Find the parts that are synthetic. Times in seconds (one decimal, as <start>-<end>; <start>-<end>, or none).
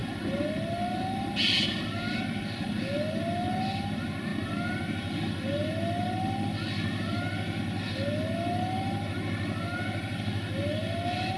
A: none